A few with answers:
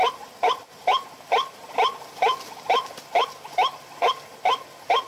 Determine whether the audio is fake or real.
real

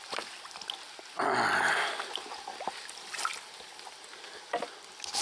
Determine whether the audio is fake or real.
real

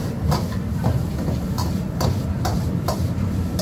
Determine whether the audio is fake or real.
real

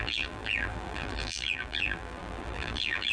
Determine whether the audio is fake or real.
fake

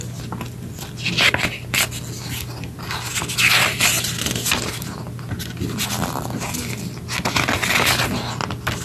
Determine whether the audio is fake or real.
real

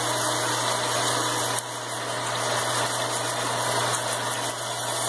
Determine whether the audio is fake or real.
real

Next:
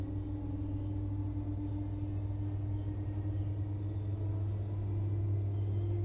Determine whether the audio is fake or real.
real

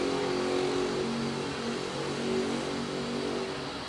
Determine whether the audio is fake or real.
real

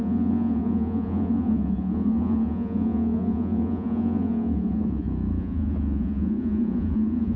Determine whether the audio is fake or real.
fake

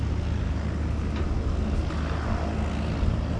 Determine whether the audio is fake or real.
real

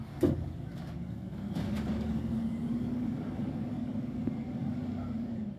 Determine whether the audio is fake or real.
fake